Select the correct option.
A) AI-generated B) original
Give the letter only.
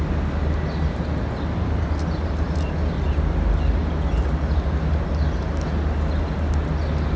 B